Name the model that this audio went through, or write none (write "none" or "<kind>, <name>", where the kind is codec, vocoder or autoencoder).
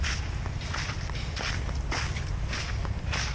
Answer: none